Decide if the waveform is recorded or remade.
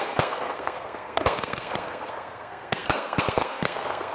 remade